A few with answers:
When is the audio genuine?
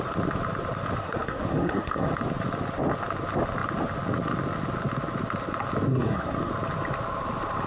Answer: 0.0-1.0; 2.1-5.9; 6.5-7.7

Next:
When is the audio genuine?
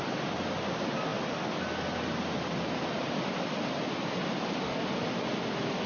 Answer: 0.0-5.9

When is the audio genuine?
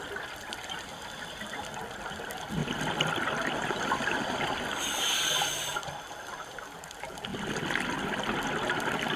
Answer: 0.0-2.6; 3.9-5.7; 6.3-9.2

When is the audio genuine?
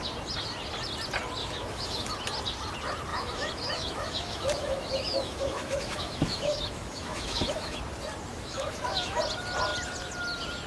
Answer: 0.0-1.4; 2.1-3.1; 7.8-8.3; 9.2-10.7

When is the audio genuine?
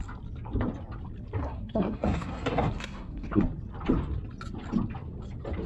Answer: 0.0-1.4; 3.4-5.7